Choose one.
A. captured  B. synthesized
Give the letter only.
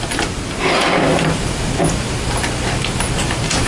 A